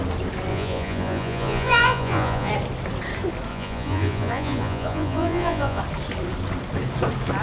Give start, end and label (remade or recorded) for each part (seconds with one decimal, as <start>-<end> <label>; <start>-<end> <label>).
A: 0.0-0.5 recorded; 0.5-2.5 remade; 2.5-3.5 recorded; 3.5-5.8 remade; 5.8-7.4 recorded